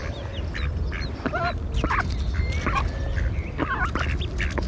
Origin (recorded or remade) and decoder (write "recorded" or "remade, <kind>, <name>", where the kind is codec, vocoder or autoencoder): recorded